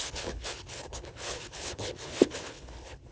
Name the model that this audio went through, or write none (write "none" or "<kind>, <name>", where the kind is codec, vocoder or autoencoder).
codec, HILCodec